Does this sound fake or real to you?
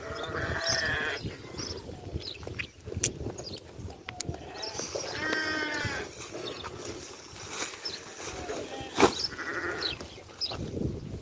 real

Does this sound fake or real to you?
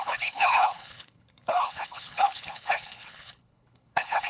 fake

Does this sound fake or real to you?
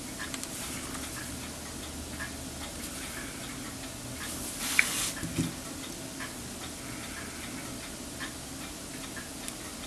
real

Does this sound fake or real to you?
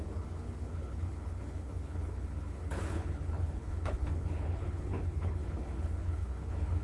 fake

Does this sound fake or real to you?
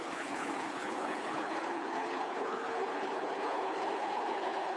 fake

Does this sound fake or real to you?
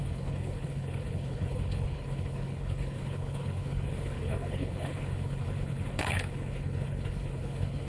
fake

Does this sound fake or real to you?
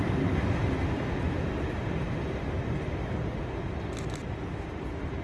real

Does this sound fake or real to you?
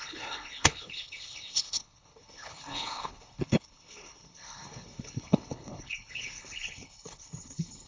fake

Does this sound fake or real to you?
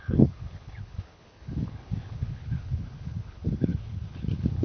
fake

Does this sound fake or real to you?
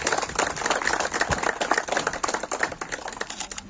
real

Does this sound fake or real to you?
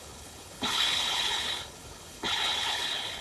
fake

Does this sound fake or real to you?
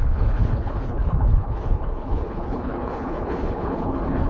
fake